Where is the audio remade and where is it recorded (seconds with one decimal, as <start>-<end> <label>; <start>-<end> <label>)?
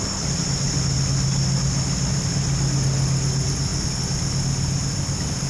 0.0-5.5 recorded